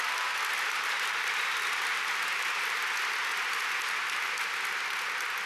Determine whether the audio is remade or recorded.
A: recorded